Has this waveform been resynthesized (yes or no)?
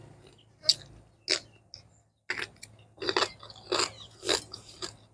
no